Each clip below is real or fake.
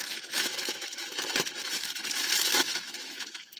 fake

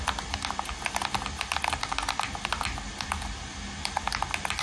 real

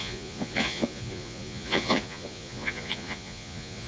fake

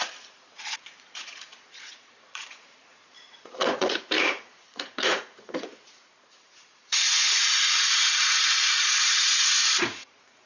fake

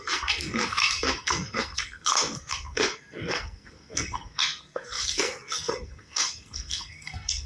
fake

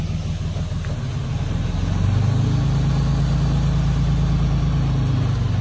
real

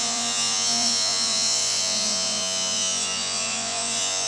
fake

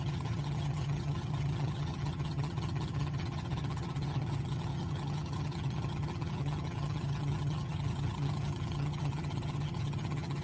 fake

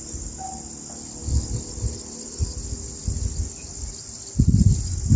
real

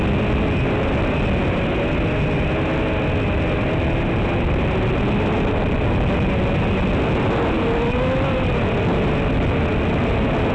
real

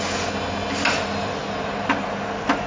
real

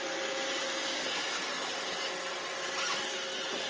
real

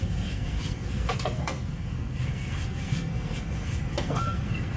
fake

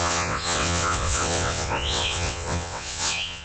fake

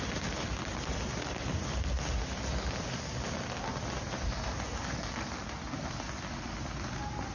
real